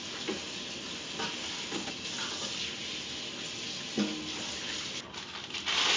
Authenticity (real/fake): real